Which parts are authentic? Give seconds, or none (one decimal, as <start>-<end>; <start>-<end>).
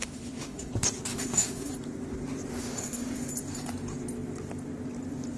0.7-1.1; 1.7-2.5; 3.3-5.4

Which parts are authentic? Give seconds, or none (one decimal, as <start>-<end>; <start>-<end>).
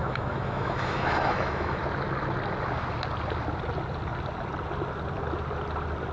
1.8-6.1